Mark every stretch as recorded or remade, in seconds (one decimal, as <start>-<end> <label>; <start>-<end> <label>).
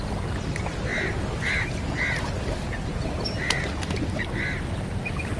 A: 0.0-5.4 recorded